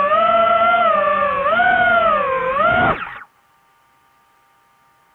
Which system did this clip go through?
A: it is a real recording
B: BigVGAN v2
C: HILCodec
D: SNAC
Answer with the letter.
A